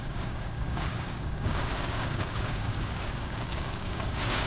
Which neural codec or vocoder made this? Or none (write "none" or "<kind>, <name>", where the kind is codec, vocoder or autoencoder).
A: codec, DAC